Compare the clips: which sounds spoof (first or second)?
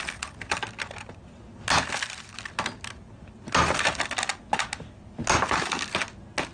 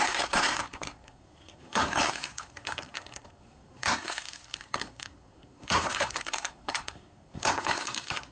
second